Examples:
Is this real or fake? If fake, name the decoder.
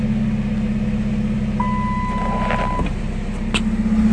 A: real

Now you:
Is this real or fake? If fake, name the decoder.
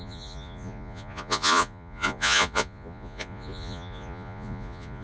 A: fake, vocoder, Vocos